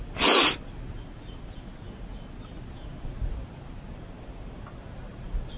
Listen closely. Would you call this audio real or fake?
real